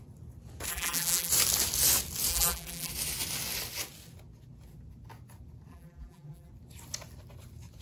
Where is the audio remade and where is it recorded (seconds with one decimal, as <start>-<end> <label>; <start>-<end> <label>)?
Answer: 0.0-0.7 recorded; 0.7-1.3 remade; 1.3-2.3 recorded; 2.3-2.9 remade; 2.9-5.7 recorded; 5.7-6.5 remade; 6.5-7.8 recorded